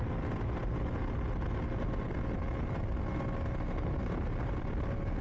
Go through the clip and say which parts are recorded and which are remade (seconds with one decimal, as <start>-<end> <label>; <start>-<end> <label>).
0.0-5.2 recorded